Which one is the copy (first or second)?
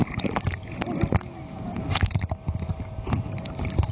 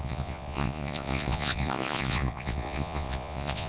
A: second